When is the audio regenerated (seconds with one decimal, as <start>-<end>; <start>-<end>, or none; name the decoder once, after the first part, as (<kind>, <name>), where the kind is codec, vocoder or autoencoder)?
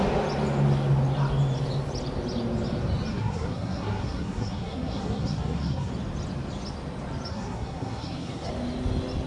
3.1-5.9 (codec, SNAC); 7.3-8.5